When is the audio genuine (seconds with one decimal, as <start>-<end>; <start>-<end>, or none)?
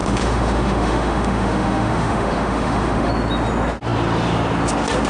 3.1-5.1